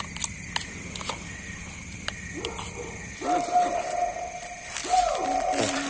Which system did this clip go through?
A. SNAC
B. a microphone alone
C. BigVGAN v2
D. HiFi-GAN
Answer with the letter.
B